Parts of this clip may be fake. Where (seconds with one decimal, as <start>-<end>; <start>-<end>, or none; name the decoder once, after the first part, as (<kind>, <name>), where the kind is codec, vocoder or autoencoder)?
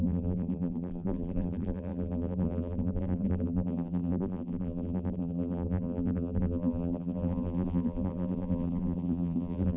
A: 0.0-9.8 (vocoder, BigVGAN v2)